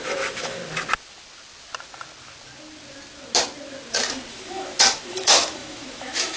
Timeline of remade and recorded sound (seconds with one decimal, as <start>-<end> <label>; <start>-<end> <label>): 0.0-0.6 remade; 0.6-4.3 recorded; 4.3-6.4 remade